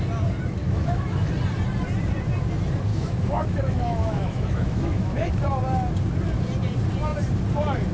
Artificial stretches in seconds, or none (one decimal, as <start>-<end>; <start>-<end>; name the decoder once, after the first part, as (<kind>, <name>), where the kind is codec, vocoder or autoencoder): 0.6-1.3 (autoencoder, DAC-VAE); 2.9-5.3